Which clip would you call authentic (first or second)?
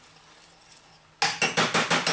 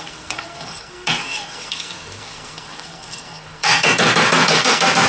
first